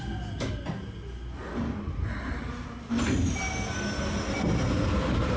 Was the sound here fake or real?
real